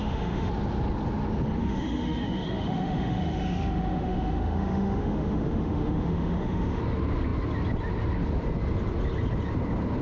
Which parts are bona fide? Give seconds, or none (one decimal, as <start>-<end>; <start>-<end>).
0.5-1.6; 6.8-10.0